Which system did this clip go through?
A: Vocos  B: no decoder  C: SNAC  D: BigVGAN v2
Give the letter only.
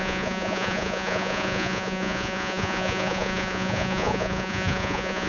A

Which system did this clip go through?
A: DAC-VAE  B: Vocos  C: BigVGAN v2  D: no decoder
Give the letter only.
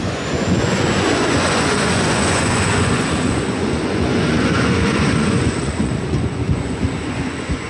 B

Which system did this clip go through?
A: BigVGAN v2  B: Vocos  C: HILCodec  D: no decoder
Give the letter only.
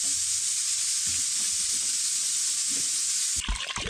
D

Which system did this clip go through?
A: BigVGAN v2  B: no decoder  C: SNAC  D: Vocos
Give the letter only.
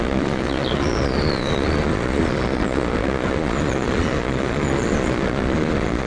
D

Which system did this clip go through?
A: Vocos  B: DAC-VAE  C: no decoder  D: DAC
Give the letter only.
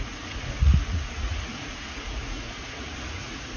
A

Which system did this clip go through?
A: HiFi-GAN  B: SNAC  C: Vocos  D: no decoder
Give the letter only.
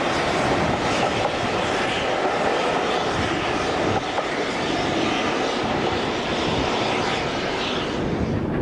D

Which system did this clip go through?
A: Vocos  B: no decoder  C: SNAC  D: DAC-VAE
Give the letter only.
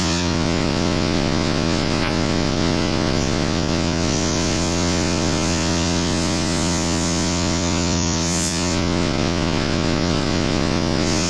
A